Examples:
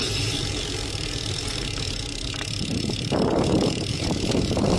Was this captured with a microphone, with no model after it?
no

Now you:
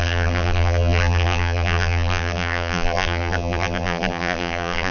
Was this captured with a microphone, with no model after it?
no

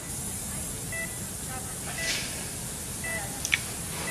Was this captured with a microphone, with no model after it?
yes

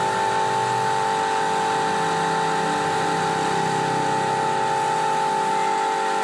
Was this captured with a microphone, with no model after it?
yes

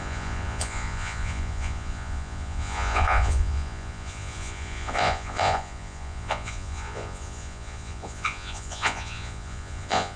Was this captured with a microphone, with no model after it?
no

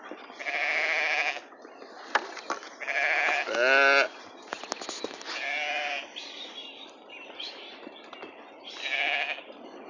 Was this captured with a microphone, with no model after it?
yes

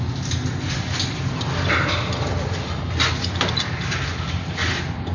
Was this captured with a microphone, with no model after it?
yes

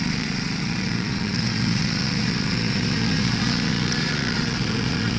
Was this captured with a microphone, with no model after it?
no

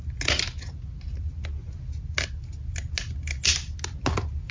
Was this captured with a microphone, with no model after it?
yes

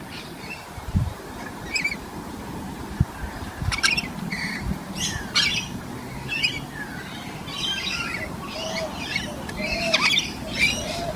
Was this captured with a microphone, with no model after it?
no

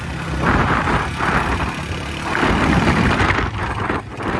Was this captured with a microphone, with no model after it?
yes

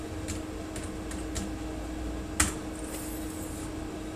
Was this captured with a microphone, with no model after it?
yes